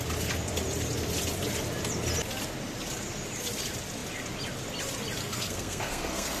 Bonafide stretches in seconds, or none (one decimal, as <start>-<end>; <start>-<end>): 0.0-5.2